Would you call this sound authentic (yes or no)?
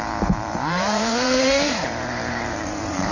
no